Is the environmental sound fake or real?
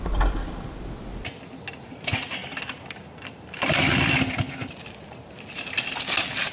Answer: real